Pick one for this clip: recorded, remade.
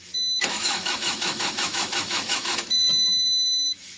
remade